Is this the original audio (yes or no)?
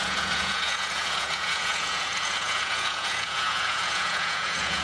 no